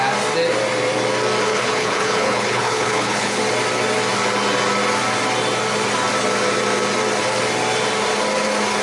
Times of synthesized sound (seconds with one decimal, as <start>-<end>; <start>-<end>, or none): 1.5-3.4